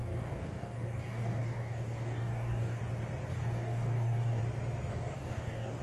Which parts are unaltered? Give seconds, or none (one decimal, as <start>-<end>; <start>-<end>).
2.8-3.3; 4.4-4.9